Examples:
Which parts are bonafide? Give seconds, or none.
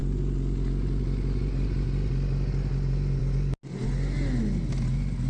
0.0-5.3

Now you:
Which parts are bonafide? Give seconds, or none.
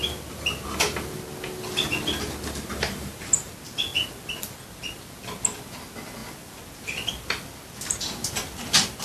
0.0-2.7; 3.5-9.0